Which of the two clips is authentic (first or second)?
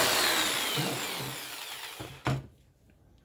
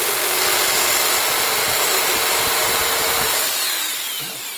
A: first